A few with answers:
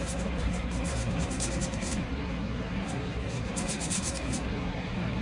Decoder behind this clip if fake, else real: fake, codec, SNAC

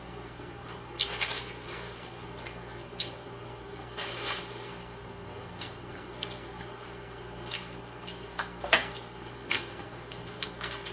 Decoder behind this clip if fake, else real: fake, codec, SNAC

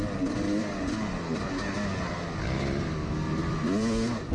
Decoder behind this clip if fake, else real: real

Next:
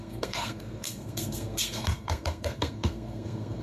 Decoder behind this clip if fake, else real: fake, codec, SNAC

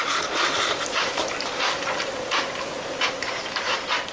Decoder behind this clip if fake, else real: real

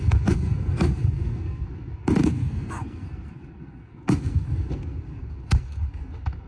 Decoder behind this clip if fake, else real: fake, codec, SNAC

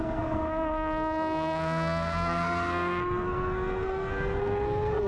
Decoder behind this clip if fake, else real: fake, codec, SNAC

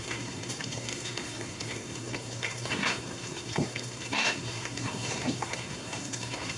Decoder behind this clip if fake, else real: fake, codec, SNAC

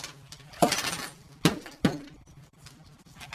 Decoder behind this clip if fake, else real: real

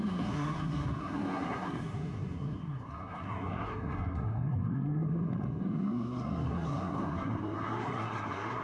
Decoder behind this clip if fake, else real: fake, codec, SNAC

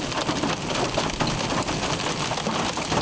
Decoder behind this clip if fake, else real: real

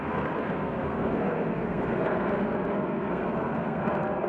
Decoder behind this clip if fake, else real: fake, codec, SNAC